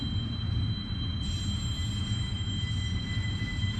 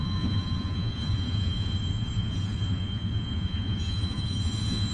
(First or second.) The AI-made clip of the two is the second